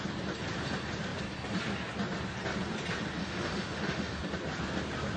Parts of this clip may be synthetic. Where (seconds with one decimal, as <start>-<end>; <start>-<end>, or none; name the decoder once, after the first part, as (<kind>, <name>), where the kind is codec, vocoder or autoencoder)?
3.2-4.2 (autoencoder, DAC-VAE)